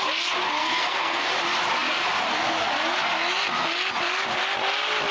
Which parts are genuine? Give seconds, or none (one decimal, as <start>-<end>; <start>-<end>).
0.0-0.6; 1.3-5.1